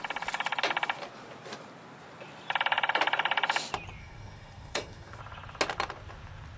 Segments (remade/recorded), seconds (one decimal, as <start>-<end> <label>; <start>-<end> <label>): 0.0-4.0 recorded; 4.0-5.2 remade; 5.2-6.6 recorded